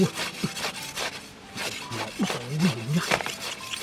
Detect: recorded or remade recorded